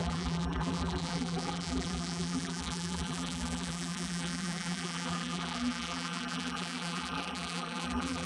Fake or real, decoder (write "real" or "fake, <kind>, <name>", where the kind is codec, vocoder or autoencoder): fake, vocoder, BigVGAN v2